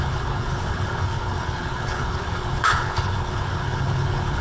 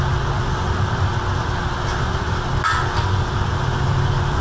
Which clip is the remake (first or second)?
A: first